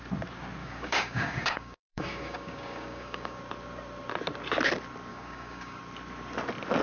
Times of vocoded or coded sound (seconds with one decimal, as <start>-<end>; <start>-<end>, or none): 0.6-3.4; 5.1-5.8